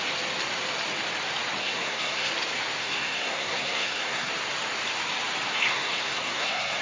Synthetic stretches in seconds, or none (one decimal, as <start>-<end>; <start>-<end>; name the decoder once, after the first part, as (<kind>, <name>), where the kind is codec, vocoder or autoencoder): 1.6-2.3 (codec, SNAC); 2.8-4.3; 5.5-6.8